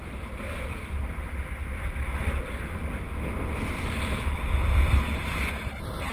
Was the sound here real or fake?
real